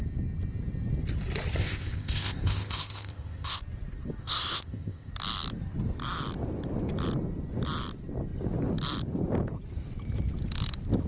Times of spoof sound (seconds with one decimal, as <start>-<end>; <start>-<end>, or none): 1.6-3.6; 4.2-5.1